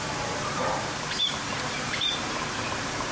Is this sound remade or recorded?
remade